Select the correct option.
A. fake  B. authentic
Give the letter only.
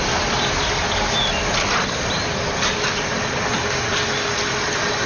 B